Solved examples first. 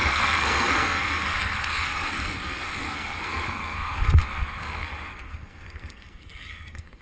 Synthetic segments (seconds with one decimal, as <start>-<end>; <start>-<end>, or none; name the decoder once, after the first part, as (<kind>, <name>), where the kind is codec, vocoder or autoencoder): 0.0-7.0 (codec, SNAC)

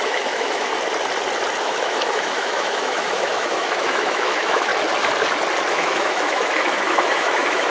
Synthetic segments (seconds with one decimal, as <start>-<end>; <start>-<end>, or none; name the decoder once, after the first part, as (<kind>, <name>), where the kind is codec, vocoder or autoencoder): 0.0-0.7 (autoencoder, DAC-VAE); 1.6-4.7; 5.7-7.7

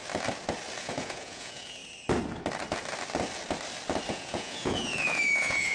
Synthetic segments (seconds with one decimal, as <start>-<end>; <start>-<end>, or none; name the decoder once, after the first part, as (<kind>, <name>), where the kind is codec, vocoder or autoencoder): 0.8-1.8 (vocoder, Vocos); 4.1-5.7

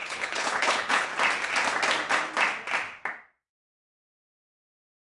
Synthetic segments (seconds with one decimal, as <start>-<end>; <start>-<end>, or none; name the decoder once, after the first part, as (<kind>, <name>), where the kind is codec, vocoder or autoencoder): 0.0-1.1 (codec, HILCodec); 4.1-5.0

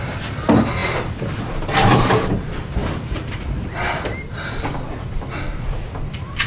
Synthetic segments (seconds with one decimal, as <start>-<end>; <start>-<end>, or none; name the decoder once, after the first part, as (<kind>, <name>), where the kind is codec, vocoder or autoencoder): none

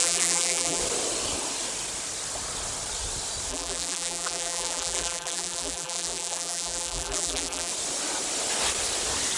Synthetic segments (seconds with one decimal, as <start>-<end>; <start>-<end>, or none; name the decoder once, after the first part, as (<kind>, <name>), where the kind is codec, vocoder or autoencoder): 0.0-0.8 (vocoder, BigVGAN v2); 3.5-7.7